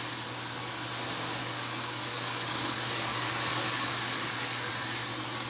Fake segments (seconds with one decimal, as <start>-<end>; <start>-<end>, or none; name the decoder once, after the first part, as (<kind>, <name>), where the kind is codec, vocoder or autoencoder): 1.4-4.7 (codec, DAC)